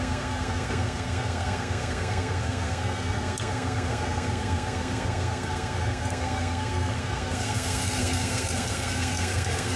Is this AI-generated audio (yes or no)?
yes